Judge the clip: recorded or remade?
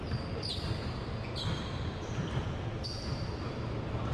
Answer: recorded